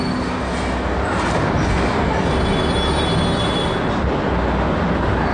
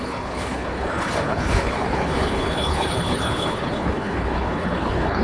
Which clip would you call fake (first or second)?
second